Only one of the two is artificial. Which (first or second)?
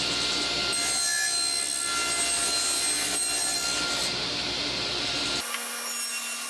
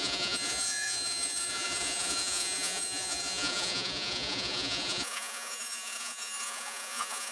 second